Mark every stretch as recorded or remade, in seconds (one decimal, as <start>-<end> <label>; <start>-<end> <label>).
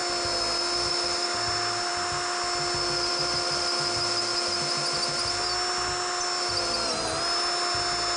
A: 0.0-0.9 recorded; 0.9-1.9 remade; 1.9-3.1 recorded; 3.1-4.3 remade; 4.3-8.2 recorded